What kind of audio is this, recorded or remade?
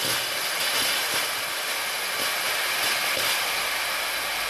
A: recorded